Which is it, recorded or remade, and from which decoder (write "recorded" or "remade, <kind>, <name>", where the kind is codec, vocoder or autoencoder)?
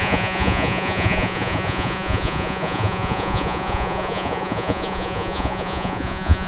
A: remade, vocoder, Vocos